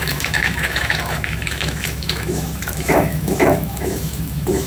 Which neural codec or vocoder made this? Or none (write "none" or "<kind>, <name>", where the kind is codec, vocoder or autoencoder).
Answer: autoencoder, DAC-VAE